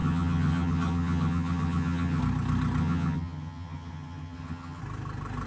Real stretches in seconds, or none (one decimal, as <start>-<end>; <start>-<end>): 2.2-2.8; 4.8-5.5